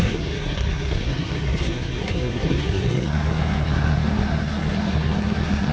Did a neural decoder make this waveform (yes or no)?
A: yes